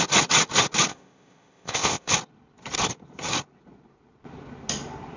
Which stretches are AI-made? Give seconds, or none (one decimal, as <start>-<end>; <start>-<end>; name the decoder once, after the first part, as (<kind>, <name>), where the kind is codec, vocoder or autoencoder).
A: 0.9-2.1 (codec, ZipCodec)